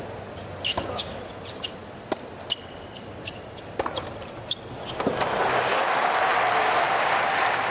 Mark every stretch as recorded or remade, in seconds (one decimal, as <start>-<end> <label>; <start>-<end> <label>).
0.0-0.7 recorded; 0.7-1.2 remade; 1.2-5.5 recorded; 5.5-6.1 remade; 6.1-7.7 recorded